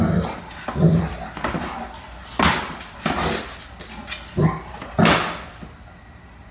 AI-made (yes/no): no